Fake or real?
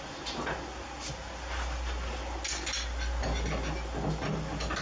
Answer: real